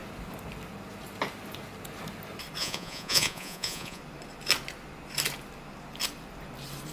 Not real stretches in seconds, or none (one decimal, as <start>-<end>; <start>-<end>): 2.6-4.0